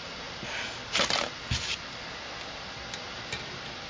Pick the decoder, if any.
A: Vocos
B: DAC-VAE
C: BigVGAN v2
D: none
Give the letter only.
D